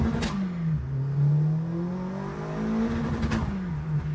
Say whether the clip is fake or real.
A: real